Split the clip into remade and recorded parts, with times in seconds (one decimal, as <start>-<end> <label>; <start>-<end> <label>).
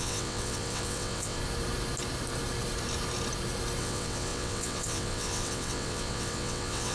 0.0-1.4 remade; 1.4-3.8 recorded; 3.8-6.9 remade